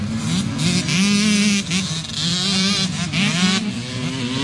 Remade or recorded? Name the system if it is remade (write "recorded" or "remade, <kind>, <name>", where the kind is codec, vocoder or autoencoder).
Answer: recorded